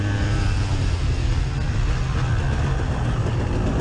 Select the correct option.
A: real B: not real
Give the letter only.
A